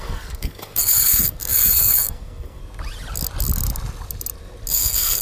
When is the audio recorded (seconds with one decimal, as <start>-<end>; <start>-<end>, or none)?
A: 2.6-4.7